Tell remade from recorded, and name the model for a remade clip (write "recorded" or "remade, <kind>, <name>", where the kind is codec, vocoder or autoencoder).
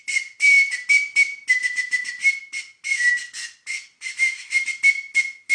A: recorded